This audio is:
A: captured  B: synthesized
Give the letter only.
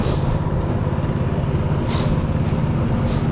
A